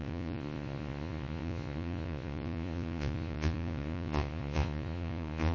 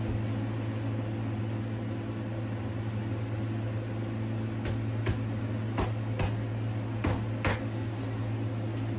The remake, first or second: first